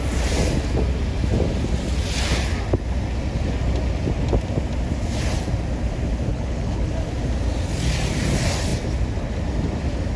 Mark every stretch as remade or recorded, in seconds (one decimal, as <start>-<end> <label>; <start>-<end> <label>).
0.0-6.3 recorded; 6.3-6.9 remade; 6.9-10.2 recorded

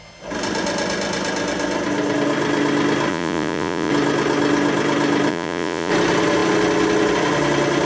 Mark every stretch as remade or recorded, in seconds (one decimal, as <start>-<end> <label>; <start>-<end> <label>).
0.0-3.1 recorded; 3.1-3.9 remade; 3.9-5.3 recorded; 5.3-5.9 remade; 5.9-7.9 recorded

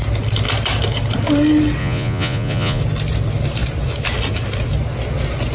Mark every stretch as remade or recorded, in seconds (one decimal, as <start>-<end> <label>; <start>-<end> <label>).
0.0-1.8 recorded; 1.8-2.8 remade; 2.8-5.5 recorded

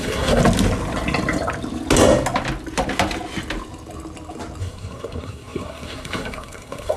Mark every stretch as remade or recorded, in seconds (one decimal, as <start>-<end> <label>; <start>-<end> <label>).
0.0-0.4 remade; 0.4-4.6 recorded; 4.6-7.0 remade

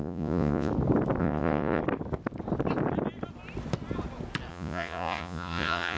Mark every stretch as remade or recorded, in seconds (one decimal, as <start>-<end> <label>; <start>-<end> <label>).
0.0-0.7 remade; 0.7-1.2 recorded; 1.2-1.8 remade; 1.8-4.5 recorded; 4.5-6.0 remade

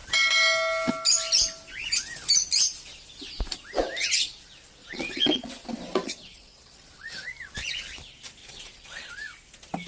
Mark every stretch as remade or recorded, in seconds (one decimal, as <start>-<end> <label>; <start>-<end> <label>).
0.0-4.8 recorded; 4.8-5.5 remade; 5.5-6.0 recorded; 6.0-6.9 remade; 6.9-8.4 recorded; 8.4-9.1 remade; 9.1-9.9 recorded

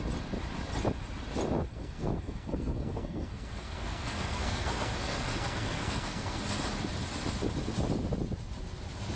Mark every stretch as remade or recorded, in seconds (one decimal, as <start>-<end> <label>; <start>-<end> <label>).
0.0-1.7 recorded; 1.7-6.4 remade; 6.4-9.2 recorded